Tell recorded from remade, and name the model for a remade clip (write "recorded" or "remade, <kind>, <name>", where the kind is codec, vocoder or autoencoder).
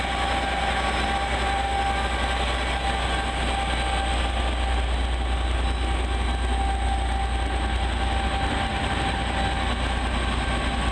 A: recorded